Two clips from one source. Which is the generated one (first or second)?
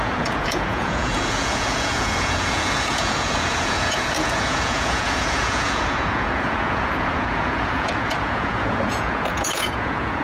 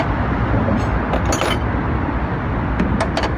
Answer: first